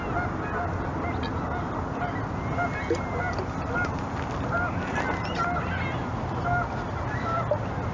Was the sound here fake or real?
real